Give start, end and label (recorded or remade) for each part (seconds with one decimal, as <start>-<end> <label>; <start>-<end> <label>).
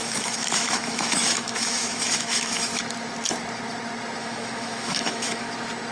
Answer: 0.0-2.8 remade; 2.8-4.2 recorded; 4.2-5.5 remade; 5.5-5.9 recorded